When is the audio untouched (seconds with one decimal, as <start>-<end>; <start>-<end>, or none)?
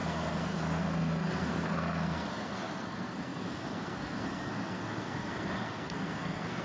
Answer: none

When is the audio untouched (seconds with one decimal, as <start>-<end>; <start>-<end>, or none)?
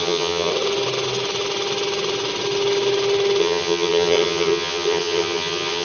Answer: 0.5-3.4